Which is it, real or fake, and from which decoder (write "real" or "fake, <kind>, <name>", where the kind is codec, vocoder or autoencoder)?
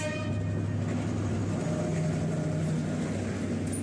real